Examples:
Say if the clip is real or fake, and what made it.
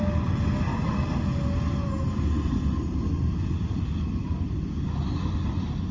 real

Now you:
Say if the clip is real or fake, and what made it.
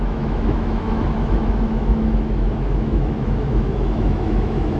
fake, autoencoder, DAC-VAE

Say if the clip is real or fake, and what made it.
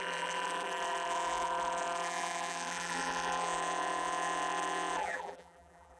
fake, vocoder, BigVGAN v2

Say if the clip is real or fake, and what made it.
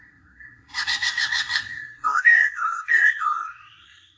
fake, codec, SNAC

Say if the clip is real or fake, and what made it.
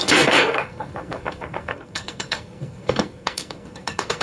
fake, codec, SNAC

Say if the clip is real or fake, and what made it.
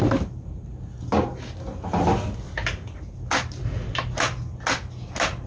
real